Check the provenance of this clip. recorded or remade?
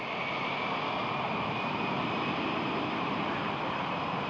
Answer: recorded